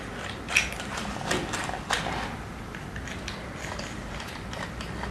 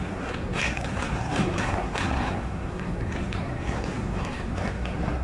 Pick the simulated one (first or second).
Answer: second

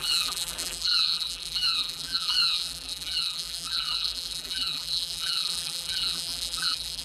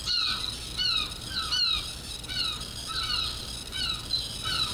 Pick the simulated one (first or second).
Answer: first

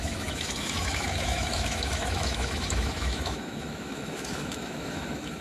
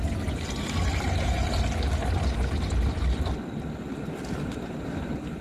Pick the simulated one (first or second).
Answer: first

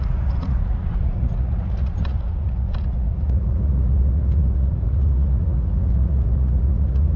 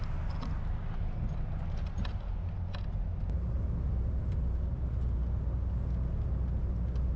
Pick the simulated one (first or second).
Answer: first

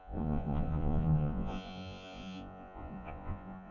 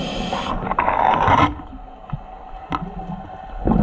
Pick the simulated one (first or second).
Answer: first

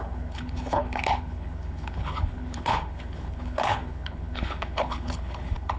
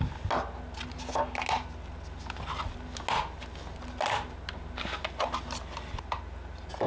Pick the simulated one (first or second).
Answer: first